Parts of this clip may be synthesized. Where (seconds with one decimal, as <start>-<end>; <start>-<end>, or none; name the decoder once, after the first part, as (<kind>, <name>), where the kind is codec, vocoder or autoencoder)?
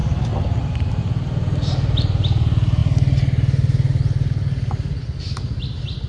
none